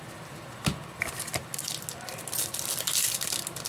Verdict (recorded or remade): recorded